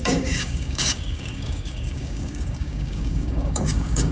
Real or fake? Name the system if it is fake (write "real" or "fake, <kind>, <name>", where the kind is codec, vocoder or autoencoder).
fake, codec, DAC